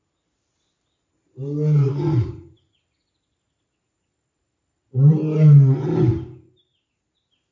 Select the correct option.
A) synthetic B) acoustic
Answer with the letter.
B